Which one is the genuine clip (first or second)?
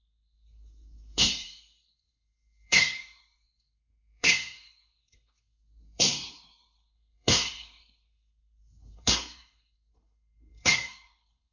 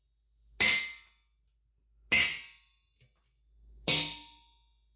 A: second